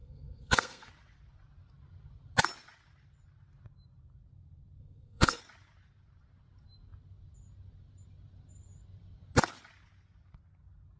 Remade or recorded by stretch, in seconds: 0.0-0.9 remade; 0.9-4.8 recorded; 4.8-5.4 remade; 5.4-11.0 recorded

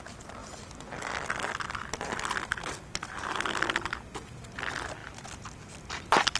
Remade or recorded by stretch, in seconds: 0.0-6.4 recorded

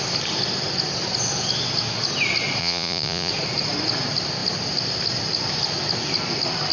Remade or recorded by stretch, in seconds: 0.0-2.6 recorded; 2.6-3.3 remade; 3.3-6.7 recorded

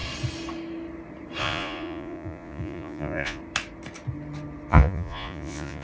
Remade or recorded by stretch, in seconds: 0.0-1.4 recorded; 1.4-3.4 remade; 3.4-4.7 recorded; 4.7-5.8 remade

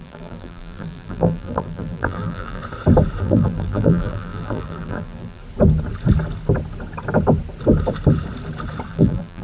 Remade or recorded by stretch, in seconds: 0.0-2.6 remade; 2.6-3.2 recorded; 3.2-5.4 remade; 5.4-8.9 recorded; 8.9-9.4 remade

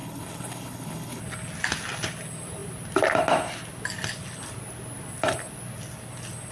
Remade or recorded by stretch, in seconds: 0.0-1.2 remade; 1.2-6.5 recorded